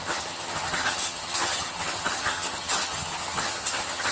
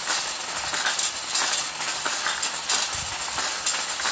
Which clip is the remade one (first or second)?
first